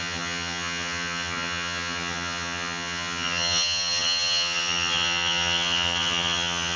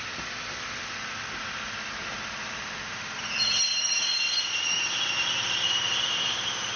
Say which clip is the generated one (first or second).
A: first